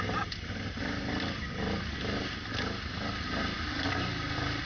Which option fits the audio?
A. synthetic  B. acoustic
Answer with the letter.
B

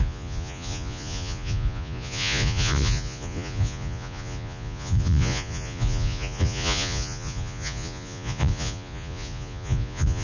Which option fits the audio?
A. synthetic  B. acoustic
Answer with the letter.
A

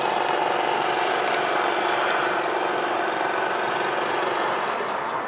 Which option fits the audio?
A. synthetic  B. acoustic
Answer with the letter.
B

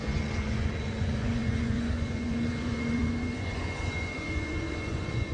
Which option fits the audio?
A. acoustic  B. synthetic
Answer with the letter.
B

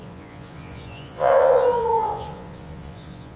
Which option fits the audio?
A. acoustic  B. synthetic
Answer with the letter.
B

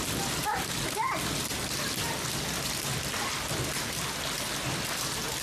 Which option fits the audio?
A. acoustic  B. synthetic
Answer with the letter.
A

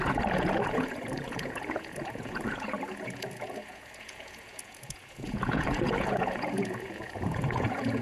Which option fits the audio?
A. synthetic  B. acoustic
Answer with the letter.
A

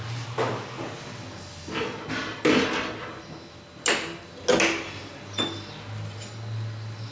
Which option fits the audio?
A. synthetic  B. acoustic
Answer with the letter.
B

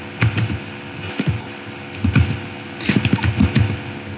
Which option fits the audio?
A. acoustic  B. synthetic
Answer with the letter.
A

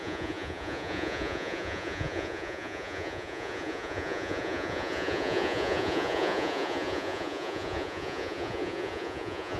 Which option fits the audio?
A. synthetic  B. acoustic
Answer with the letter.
A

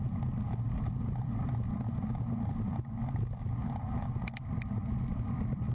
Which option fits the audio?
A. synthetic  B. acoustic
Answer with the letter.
B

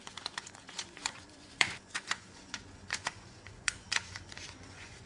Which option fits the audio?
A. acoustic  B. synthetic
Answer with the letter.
B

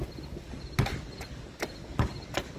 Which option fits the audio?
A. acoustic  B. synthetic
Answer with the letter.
A